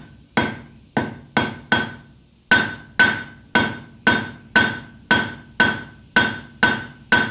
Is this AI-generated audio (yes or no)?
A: no